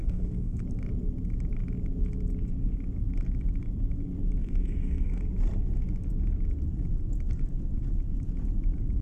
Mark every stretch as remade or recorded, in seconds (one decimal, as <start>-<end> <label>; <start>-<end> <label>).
0.0-0.6 remade; 0.6-4.4 recorded; 4.4-5.2 remade; 5.2-9.0 recorded